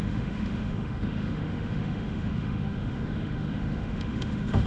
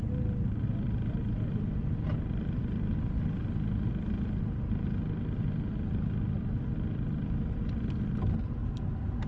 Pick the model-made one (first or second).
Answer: first